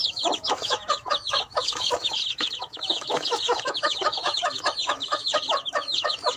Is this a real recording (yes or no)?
no